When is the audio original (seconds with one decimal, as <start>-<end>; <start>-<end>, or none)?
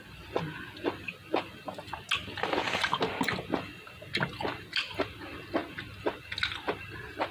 0.0-7.3